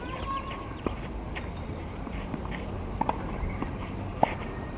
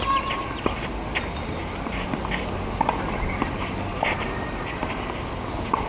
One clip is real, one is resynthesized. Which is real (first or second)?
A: second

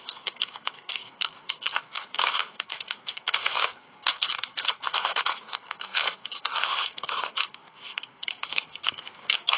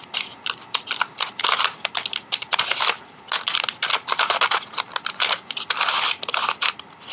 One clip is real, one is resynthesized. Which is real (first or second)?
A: second